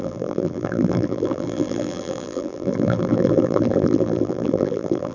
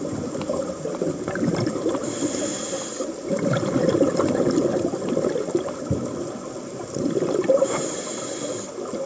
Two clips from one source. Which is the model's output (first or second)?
first